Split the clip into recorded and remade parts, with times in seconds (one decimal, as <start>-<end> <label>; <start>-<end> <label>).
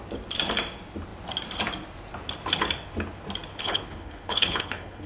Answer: 0.0-3.5 recorded; 3.5-5.1 remade